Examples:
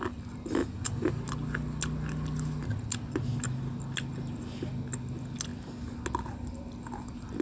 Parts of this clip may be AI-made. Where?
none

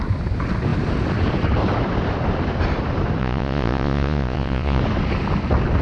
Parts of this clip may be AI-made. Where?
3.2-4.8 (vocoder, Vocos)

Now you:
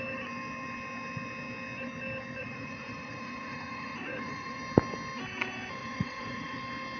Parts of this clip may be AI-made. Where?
2.4-4.6 (vocoder, Vocos); 5.8-6.6

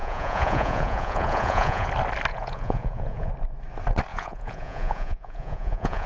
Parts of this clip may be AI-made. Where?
0.0-1.9 (vocoder, Vocos); 2.3-3.3; 4.1-6.1

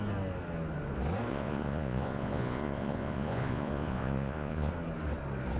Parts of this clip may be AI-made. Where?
1.3-4.7 (vocoder, Vocos)

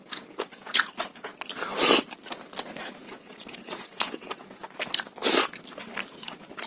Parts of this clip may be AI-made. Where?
0.0-1.3 (vocoder, Vocos); 2.7-4.6; 6.1-6.7